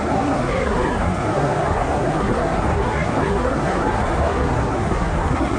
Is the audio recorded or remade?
remade